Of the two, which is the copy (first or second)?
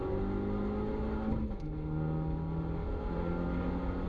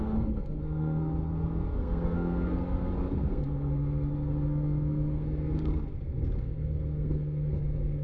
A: second